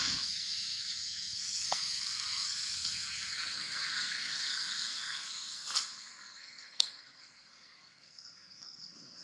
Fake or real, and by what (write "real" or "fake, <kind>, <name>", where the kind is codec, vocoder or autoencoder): fake, codec, SNAC